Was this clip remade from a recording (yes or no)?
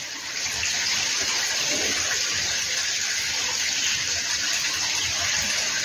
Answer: no